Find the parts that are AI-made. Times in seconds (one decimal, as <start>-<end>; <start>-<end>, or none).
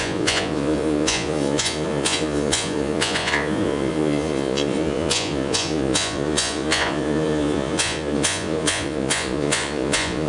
0.0-10.3